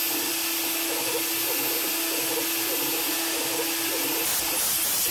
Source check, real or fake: real